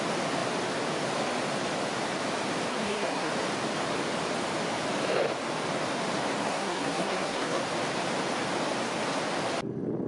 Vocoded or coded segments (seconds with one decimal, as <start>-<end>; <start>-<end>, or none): 2.7-3.3; 6.4-7.6